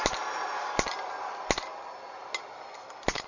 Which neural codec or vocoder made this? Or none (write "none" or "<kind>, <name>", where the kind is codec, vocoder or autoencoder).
none